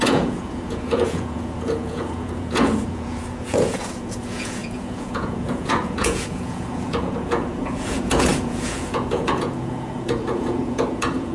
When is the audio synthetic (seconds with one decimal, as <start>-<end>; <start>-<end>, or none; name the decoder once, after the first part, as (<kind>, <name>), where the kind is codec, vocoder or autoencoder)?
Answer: 0.0-11.3 (vocoder, Vocos)